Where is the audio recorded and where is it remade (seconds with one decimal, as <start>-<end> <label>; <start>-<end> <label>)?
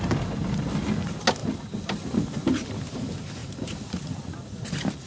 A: 0.0-5.1 recorded